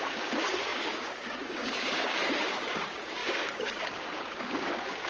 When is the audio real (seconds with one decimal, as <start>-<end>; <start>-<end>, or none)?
none